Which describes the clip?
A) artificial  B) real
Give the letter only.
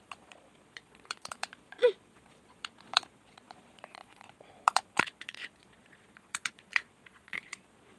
A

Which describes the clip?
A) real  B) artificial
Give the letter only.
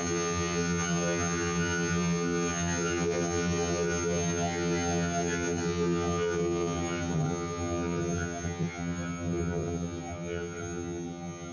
B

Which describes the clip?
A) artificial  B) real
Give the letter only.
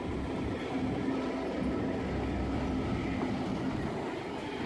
B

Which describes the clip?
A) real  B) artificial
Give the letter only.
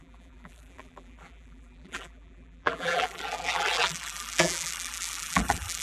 B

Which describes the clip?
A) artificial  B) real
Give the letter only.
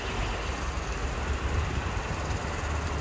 B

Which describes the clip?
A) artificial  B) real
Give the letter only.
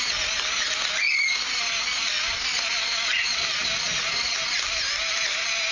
B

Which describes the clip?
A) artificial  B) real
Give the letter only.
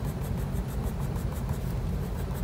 A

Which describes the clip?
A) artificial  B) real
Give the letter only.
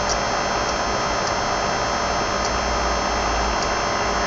B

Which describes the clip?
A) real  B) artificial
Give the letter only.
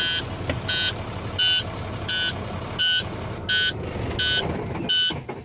A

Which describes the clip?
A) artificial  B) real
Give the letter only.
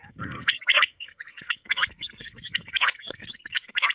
A